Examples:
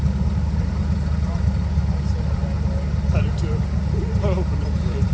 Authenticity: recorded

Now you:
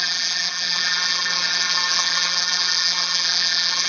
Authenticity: remade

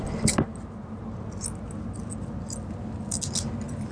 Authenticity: recorded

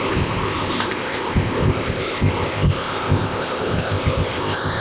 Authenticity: remade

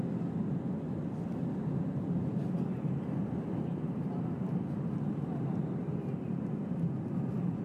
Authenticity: remade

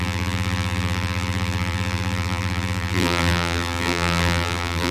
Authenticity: remade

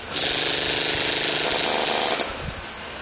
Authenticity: recorded